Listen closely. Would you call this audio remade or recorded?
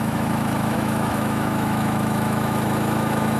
remade